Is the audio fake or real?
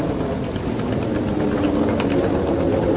real